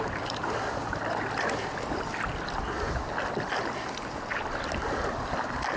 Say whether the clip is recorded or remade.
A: recorded